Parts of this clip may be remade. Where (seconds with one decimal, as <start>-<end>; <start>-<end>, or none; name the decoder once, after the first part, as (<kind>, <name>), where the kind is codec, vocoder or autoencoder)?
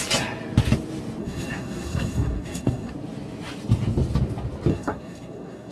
1.2-2.9 (codec, SNAC); 4.7-5.7